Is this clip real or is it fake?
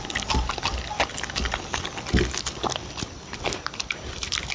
real